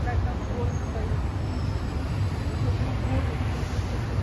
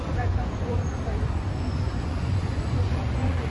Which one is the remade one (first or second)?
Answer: second